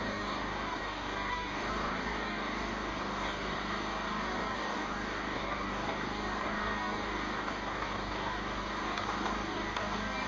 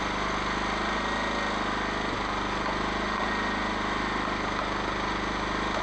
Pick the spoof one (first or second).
first